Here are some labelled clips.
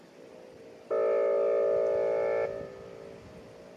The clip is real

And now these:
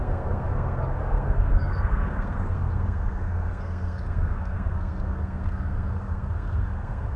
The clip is fake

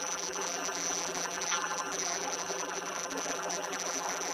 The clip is fake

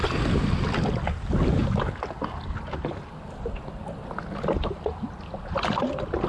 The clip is real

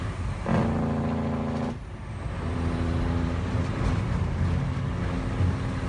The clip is real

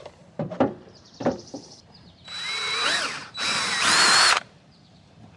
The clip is fake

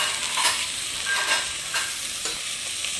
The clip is real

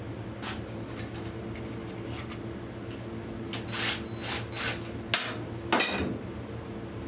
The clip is real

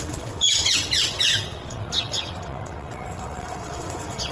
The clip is fake